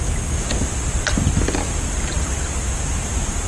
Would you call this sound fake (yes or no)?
no